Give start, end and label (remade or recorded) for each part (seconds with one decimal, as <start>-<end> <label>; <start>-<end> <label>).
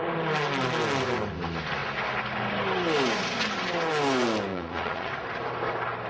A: 0.0-4.5 recorded; 4.5-5.1 remade; 5.1-6.1 recorded